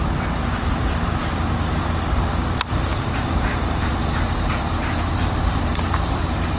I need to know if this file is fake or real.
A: fake